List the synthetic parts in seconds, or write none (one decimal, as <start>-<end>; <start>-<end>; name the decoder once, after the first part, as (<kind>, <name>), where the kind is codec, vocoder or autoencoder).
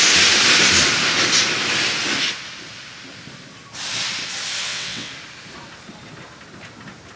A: 4.6-5.1 (vocoder, WaveNeXt)